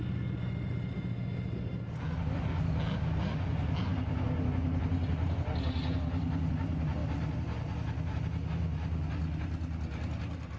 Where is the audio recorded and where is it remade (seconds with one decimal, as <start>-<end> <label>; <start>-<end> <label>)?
0.0-10.6 recorded

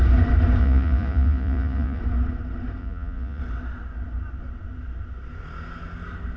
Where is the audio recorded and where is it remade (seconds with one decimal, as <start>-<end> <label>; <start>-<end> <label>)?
0.0-0.6 recorded; 0.6-2.0 remade; 2.0-2.8 recorded; 2.8-3.4 remade; 3.4-6.4 recorded

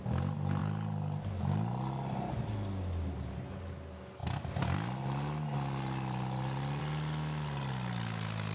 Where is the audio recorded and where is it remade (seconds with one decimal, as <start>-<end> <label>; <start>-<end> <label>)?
0.0-8.5 recorded

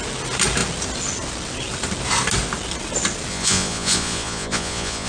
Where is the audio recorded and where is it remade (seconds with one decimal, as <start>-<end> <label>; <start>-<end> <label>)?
0.0-3.3 recorded; 3.3-5.1 remade

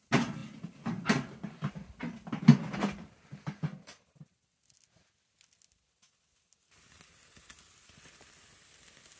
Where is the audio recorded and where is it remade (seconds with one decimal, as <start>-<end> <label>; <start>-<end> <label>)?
0.0-9.2 recorded

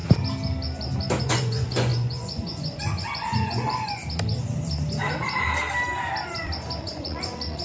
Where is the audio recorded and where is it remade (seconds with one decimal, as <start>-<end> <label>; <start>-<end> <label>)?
0.0-1.2 recorded; 1.2-4.0 remade; 4.0-6.8 recorded; 6.8-7.6 remade

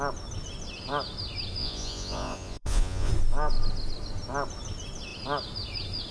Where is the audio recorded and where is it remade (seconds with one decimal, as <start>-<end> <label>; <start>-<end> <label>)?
0.0-1.6 recorded; 1.6-3.1 remade; 3.1-6.1 recorded